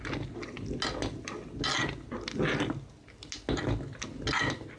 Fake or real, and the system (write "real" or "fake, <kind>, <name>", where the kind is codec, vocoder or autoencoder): real